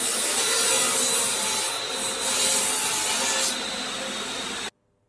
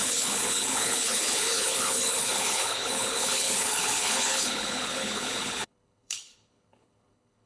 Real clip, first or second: first